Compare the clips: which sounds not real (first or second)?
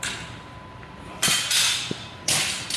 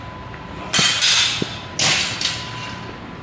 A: first